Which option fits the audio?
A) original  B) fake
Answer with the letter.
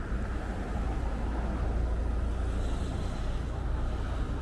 A